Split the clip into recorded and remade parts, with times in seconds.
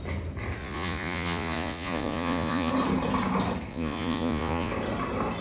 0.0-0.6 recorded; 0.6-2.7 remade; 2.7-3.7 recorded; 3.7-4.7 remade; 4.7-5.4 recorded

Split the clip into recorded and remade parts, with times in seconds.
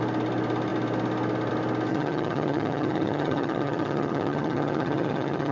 0.0-1.9 recorded; 1.9-5.5 remade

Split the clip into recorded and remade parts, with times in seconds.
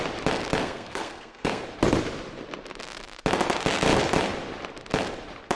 0.0-0.6 recorded; 0.6-1.6 remade; 1.6-5.6 recorded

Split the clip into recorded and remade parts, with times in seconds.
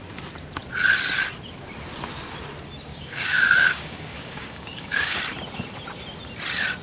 0.0-2.9 recorded; 2.9-5.2 remade; 5.2-6.8 recorded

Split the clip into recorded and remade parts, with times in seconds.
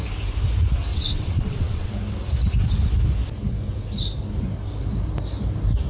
0.0-0.9 recorded; 0.9-1.9 remade; 1.9-5.9 recorded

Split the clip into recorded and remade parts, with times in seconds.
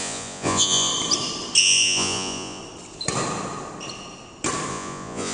0.0-0.9 remade; 0.9-1.6 recorded; 1.6-2.6 remade; 2.6-4.7 recorded; 4.7-5.3 remade